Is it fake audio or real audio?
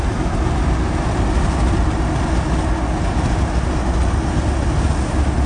real